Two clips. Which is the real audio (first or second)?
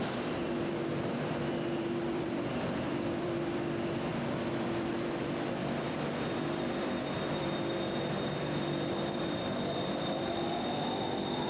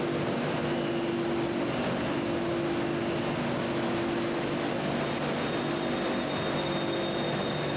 second